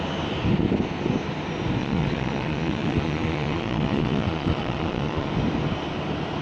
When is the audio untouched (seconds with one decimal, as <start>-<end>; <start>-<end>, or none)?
0.0-1.8; 5.3-6.4